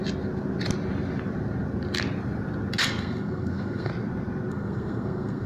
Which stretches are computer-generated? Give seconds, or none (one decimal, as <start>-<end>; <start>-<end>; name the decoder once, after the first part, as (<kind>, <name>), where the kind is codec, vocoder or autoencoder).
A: 2.8-3.9 (codec, SNAC); 4.5-5.5